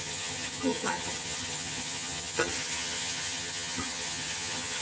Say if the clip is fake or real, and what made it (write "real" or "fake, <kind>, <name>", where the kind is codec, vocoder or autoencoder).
fake, vocoder, HiFi-GAN